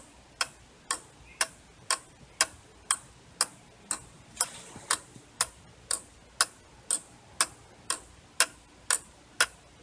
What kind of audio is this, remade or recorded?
recorded